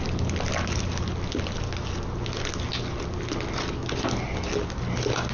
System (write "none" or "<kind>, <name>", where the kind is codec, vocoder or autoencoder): none